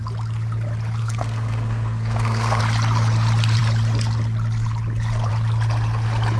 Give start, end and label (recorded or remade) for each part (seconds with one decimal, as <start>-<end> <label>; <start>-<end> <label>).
0.0-1.0 recorded; 1.0-2.6 remade; 2.6-6.4 recorded